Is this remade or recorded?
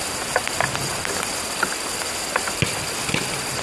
recorded